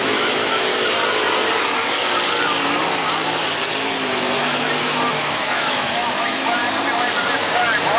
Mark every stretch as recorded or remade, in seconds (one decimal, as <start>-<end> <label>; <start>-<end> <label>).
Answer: 0.0-0.7 remade; 0.7-5.1 recorded; 5.1-6.6 remade; 6.6-8.0 recorded